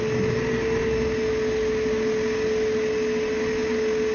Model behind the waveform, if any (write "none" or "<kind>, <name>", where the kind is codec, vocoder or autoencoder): none